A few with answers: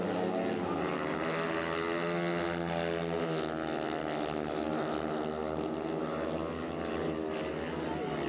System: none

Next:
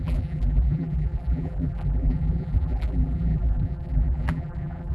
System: vocoder, BigVGAN v2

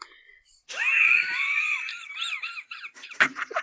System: vocoder, BigVGAN v2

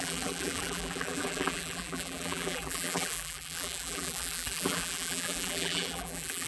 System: vocoder, BigVGAN v2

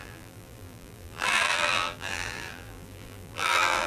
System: vocoder, BigVGAN v2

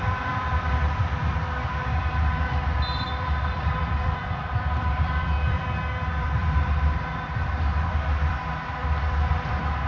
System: vocoder, BigVGAN v2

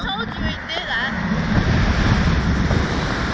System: none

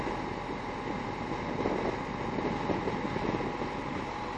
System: none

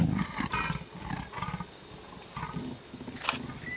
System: none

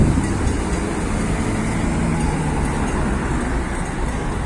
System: none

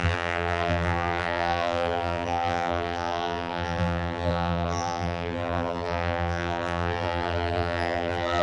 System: vocoder, BigVGAN v2